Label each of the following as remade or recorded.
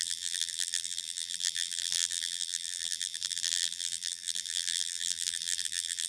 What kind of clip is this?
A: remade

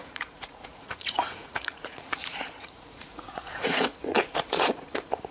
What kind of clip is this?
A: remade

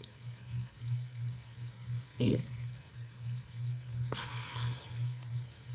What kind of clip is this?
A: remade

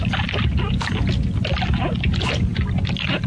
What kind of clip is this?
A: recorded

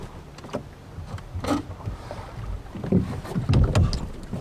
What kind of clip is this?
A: recorded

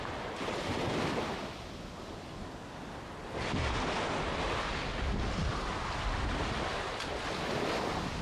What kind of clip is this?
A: recorded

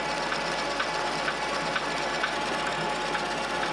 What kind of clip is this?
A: recorded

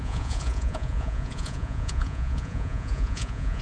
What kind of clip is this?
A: remade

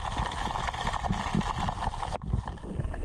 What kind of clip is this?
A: recorded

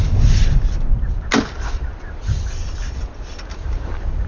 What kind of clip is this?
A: recorded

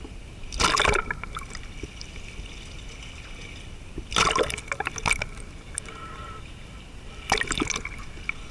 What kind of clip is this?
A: recorded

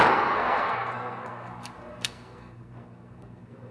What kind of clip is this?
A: remade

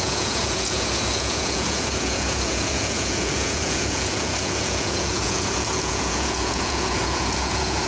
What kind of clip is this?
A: remade